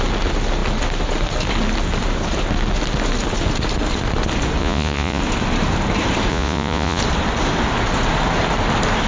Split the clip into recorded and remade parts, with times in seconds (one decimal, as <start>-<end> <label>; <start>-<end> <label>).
0.0-4.6 recorded; 4.6-5.2 remade; 5.2-6.3 recorded; 6.3-7.0 remade; 7.0-9.1 recorded